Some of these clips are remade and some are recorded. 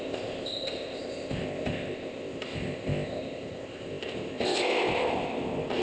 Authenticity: remade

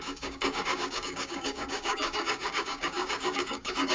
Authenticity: remade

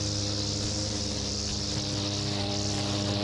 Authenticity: recorded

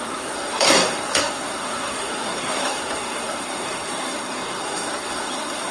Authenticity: remade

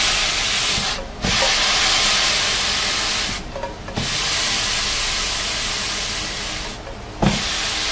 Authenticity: recorded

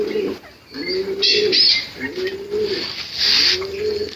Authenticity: recorded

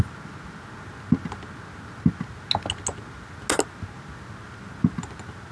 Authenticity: recorded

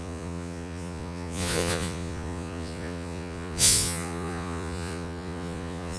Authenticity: remade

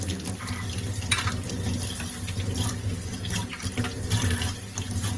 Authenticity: recorded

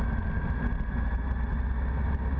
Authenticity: recorded